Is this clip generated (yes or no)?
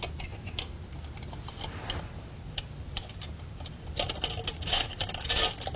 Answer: no